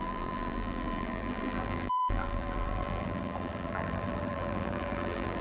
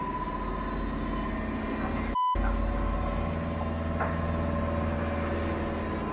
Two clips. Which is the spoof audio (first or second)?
first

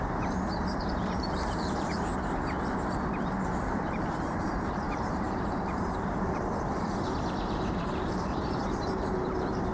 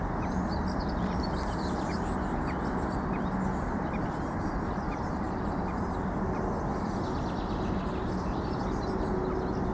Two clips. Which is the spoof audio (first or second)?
first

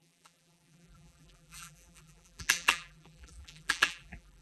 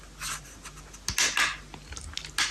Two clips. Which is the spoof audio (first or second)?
first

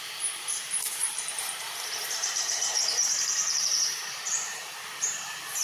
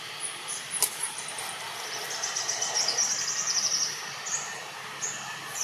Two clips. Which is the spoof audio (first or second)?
first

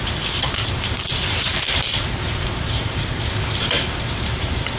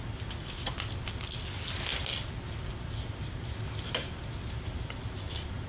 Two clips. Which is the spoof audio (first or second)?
first